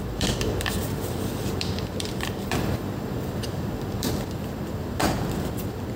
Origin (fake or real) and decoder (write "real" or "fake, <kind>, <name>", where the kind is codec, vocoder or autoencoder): fake, vocoder, BigVGAN v2